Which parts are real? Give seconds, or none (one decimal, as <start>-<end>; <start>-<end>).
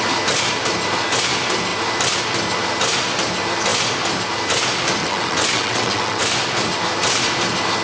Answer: 0.0-5.0; 6.2-7.8